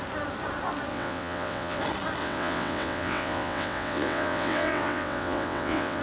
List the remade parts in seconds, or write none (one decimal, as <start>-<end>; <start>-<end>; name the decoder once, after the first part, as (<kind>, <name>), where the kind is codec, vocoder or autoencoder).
0.9-1.8 (vocoder, WaveNeXt); 2.2-6.0